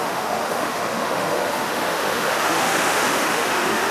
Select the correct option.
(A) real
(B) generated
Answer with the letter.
B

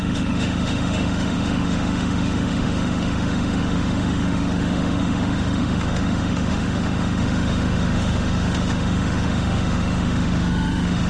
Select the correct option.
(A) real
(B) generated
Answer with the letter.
B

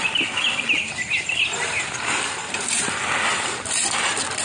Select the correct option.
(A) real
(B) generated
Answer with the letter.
A